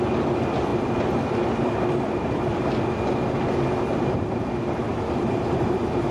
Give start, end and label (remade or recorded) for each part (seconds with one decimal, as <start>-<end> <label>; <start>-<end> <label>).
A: 0.0-4.9 recorded; 4.9-6.1 remade